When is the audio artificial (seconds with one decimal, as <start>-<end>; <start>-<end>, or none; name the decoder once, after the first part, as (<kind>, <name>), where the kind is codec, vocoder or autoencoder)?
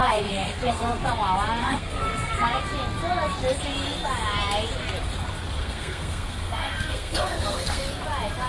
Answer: 0.0-1.0 (codec, SNAC); 1.6-2.6; 5.6-7.8